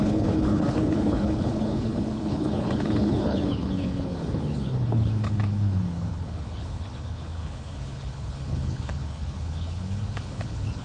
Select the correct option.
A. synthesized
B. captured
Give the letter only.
A